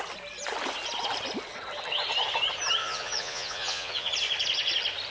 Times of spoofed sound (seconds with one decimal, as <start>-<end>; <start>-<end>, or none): 2.8-4.1